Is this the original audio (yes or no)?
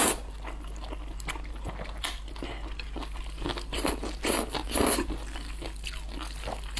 yes